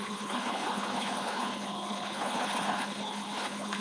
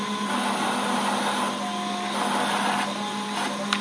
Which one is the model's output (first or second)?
first